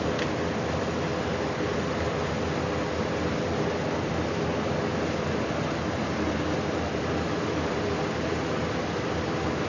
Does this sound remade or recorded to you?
recorded